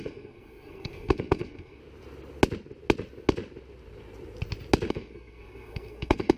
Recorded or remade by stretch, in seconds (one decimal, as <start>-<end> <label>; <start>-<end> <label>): 0.0-1.8 remade; 1.8-4.9 recorded; 4.9-6.4 remade